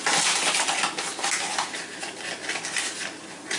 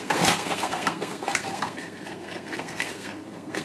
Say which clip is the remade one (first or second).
second